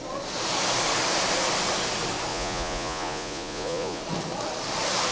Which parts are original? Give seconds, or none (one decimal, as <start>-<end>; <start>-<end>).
0.0-2.3; 4.0-5.1